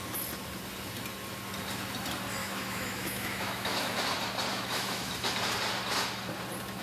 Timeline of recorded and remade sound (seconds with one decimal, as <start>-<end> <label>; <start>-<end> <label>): 0.0-2.4 recorded; 2.4-4.0 remade; 4.0-4.5 recorded; 4.5-5.1 remade; 5.1-6.8 recorded